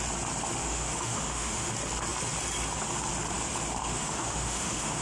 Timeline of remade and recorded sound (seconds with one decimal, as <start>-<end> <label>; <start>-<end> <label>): 0.0-0.6 recorded; 0.6-1.7 remade; 1.7-3.8 recorded; 3.8-5.0 remade